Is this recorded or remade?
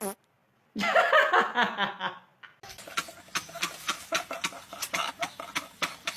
recorded